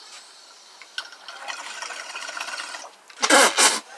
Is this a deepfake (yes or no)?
no